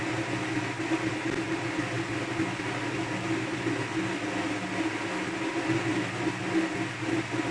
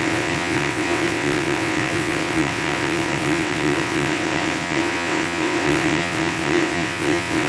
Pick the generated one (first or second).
second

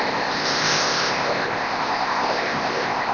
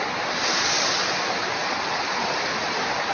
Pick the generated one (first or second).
first